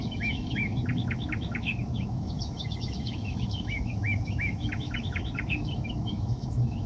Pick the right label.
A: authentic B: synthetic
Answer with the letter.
B